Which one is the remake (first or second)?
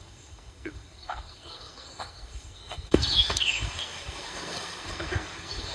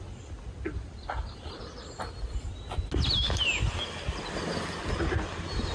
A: first